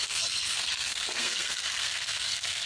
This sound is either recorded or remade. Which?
remade